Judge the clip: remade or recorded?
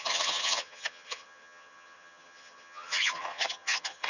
remade